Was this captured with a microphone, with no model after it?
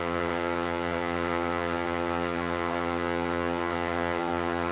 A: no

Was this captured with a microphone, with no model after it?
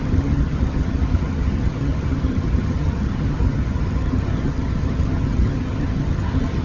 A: no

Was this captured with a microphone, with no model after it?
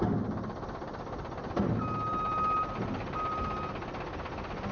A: yes